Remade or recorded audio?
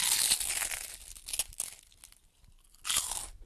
recorded